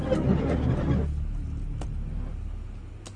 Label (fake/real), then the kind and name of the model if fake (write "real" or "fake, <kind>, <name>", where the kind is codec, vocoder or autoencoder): real